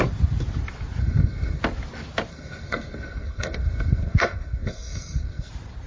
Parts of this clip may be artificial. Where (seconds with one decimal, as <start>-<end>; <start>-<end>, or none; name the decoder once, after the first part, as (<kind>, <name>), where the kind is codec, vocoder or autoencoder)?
1.0-1.6 (codec, SNAC); 2.3-5.5